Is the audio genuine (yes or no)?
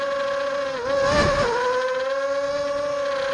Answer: yes